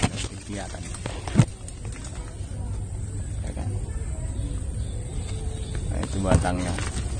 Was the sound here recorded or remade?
recorded